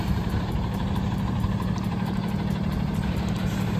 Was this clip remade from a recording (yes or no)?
yes